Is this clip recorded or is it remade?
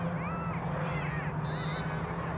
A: recorded